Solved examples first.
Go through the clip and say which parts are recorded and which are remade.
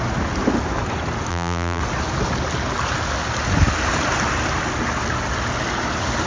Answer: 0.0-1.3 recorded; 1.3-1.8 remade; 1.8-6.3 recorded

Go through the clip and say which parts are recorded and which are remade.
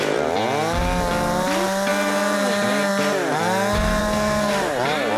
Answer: 0.0-4.0 recorded; 4.0-4.5 remade; 4.5-5.2 recorded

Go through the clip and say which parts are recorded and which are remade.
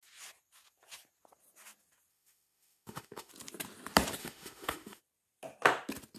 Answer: 0.0-2.1 recorded; 2.1-3.3 remade; 3.3-4.2 recorded; 4.2-5.0 remade; 5.0-6.2 recorded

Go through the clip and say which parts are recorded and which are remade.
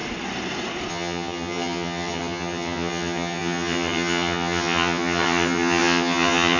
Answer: 0.0-0.9 recorded; 0.9-6.6 remade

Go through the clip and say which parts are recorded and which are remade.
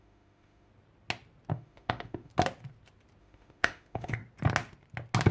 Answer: 0.0-0.7 remade; 0.7-1.5 recorded; 1.5-2.3 remade; 2.3-3.2 recorded; 3.2-4.2 remade; 4.2-5.3 recorded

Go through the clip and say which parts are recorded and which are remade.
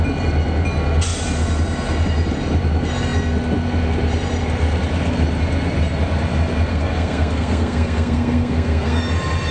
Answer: 0.0-6.7 recorded; 6.7-9.0 remade; 9.0-9.5 recorded